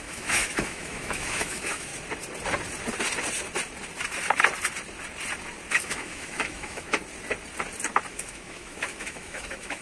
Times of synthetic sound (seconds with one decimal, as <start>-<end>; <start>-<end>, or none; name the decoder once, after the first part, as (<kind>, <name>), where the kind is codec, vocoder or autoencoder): 0.0-1.9 (autoencoder, DAC-VAE); 5.7-7.0; 8.1-9.8